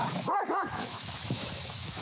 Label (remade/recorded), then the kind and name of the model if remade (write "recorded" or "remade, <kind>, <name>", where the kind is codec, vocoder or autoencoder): remade, autoencoder, DAC-VAE